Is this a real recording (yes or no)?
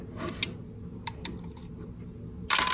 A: yes